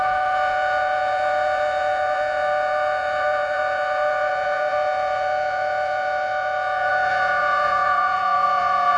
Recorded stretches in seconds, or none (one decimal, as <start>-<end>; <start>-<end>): none